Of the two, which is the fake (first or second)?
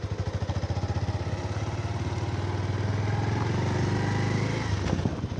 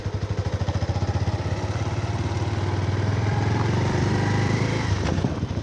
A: second